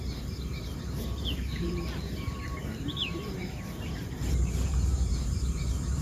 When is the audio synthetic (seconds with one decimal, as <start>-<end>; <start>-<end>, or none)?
0.0-6.0